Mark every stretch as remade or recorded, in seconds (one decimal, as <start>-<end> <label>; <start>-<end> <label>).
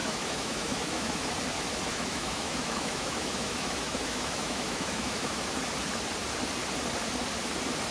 0.0-1.3 remade; 1.3-1.9 recorded; 1.9-5.4 remade; 5.4-7.9 recorded